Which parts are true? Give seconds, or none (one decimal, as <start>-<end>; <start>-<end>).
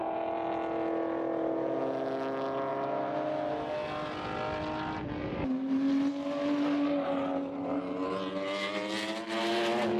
0.0-10.0